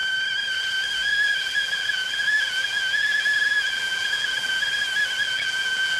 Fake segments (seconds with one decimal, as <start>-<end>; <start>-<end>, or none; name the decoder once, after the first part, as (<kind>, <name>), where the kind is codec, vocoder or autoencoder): 1.0-4.6 (vocoder, BigVGAN v2); 5.2-6.0